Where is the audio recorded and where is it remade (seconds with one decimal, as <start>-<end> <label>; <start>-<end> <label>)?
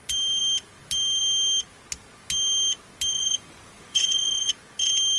0.0-3.1 recorded; 3.1-4.5 remade; 4.5-5.2 recorded